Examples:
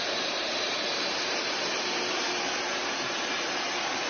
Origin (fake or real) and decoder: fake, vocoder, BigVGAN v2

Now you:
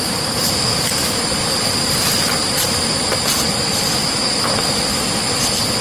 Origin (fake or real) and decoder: real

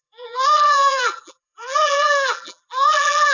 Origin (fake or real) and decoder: fake, vocoder, BigVGAN v2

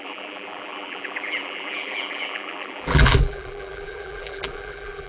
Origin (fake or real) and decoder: fake, vocoder, BigVGAN v2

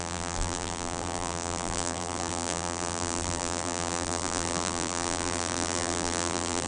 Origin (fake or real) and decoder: fake, vocoder, BigVGAN v2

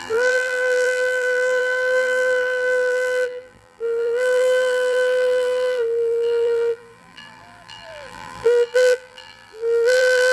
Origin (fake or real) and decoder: fake, vocoder, BigVGAN v2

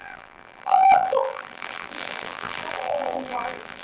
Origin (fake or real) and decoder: fake, vocoder, BigVGAN v2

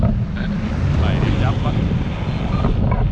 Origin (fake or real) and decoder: real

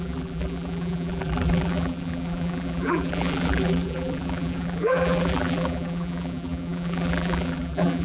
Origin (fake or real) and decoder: fake, vocoder, BigVGAN v2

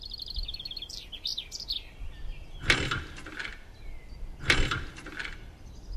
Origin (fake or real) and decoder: fake, vocoder, BigVGAN v2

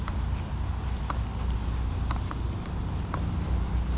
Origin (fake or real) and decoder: real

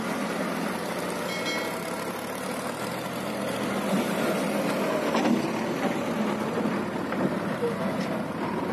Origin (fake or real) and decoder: real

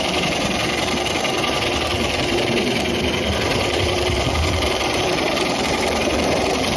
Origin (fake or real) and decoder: fake, vocoder, BigVGAN v2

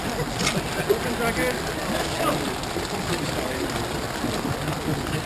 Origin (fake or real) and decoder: real